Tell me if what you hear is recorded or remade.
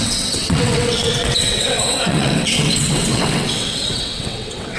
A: remade